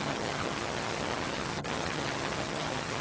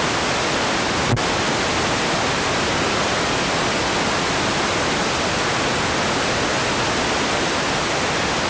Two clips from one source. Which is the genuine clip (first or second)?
second